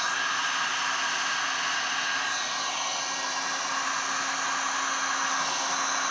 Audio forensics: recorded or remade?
recorded